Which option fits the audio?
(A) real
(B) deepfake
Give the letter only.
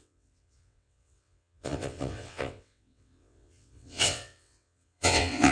B